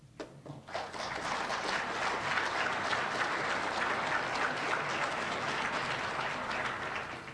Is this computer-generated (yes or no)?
no